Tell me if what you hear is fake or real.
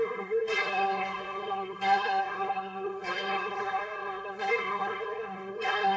fake